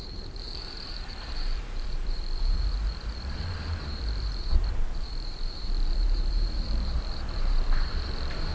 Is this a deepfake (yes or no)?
yes